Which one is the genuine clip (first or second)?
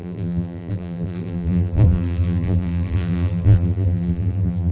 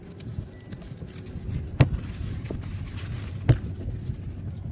second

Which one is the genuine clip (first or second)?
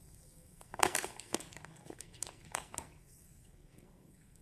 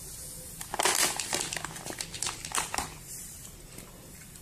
second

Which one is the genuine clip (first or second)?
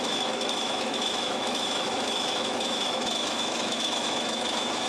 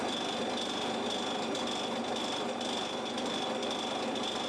second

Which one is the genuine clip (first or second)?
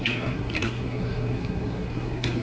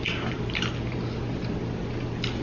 second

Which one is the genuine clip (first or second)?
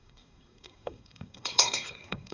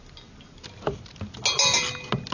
second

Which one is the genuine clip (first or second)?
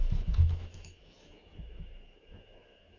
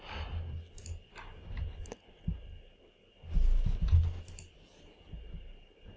second